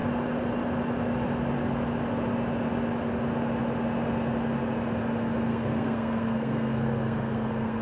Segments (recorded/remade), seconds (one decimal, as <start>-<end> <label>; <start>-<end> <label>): 0.0-5.5 recorded; 5.5-7.8 remade